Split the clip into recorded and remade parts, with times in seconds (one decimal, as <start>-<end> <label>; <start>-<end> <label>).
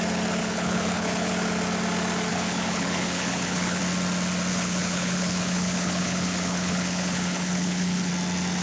0.0-0.4 recorded; 0.4-1.3 remade; 1.3-2.3 recorded; 2.3-3.8 remade; 3.8-4.5 recorded; 4.5-8.1 remade; 8.1-8.6 recorded